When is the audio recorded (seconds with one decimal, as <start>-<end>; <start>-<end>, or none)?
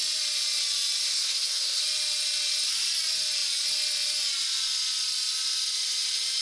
0.0-1.1; 1.8-6.4